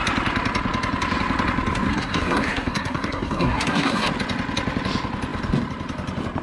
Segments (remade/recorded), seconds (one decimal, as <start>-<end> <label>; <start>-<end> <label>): 0.0-1.9 recorded; 1.9-4.1 remade; 4.1-6.4 recorded